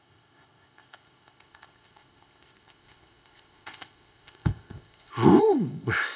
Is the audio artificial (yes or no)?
yes